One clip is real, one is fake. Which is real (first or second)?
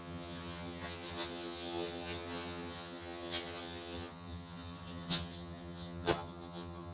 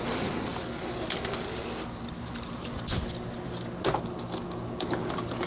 second